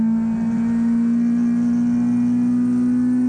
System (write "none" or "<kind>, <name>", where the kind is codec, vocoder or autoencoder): none